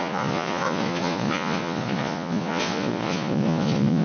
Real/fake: fake